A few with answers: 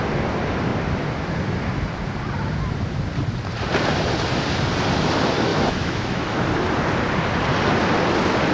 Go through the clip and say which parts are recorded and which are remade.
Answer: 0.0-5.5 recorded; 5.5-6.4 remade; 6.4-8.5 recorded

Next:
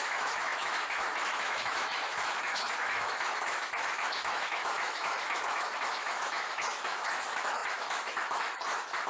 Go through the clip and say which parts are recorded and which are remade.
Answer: 0.0-9.1 remade

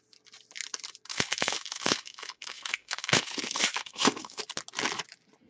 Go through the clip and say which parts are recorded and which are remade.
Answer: 0.0-1.1 recorded; 1.1-4.4 remade; 4.4-5.5 recorded

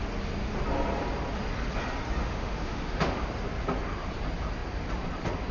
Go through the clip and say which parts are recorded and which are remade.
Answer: 0.0-2.2 recorded; 2.2-3.2 remade; 3.2-5.5 recorded

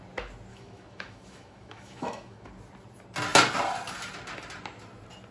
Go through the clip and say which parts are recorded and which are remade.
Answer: 0.0-0.5 recorded; 0.5-2.5 remade; 2.5-5.3 recorded

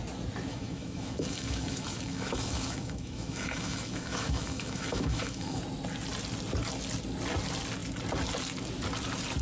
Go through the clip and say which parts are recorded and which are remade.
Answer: 0.0-0.5 recorded; 0.5-5.6 remade; 5.6-9.4 recorded

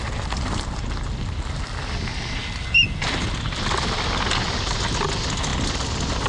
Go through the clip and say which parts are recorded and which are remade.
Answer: 0.0-6.3 recorded